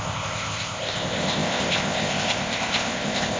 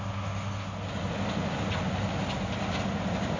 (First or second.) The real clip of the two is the second